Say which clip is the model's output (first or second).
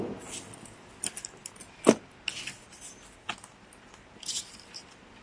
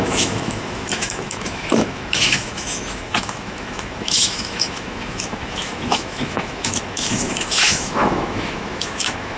second